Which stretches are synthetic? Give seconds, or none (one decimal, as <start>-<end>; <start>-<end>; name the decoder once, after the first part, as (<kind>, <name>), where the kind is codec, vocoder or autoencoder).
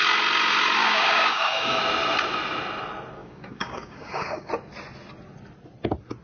0.8-1.8 (codec, DAC); 3.2-4.5